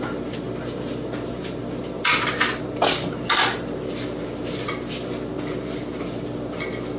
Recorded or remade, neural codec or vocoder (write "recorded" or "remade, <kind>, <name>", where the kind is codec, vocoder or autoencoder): recorded